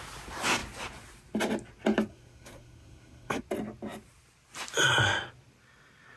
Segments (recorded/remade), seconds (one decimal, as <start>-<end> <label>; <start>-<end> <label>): 0.0-2.1 recorded; 2.1-3.4 remade; 3.4-6.2 recorded